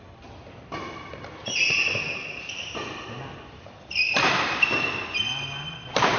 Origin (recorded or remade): remade